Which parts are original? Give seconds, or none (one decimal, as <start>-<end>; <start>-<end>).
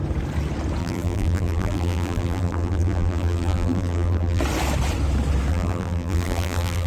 0.0-0.8; 4.4-5.5